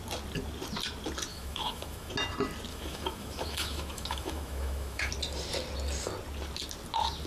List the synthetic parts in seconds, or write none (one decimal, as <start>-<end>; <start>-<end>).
1.3-2.1; 2.7-5.1